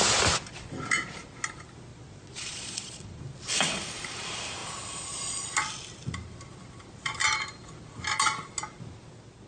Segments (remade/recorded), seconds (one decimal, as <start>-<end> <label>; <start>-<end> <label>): 0.0-1.9 recorded; 1.9-3.2 remade; 3.2-9.5 recorded